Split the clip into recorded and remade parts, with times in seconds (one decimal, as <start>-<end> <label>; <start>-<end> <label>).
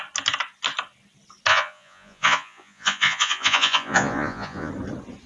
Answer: 0.0-1.5 recorded; 1.5-4.7 remade; 4.7-5.3 recorded